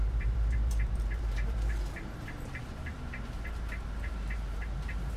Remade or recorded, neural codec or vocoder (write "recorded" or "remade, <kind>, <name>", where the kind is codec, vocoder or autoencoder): remade, vocoder, BigVGAN v2